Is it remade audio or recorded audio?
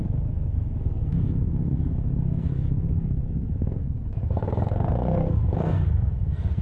remade